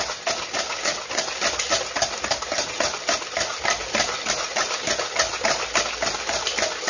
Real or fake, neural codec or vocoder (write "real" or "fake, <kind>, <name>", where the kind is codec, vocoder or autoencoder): real